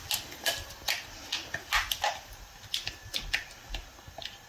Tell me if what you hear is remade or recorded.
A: recorded